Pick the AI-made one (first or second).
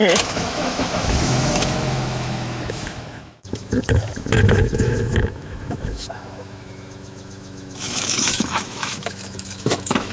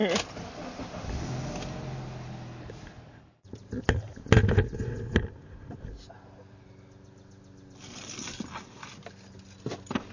first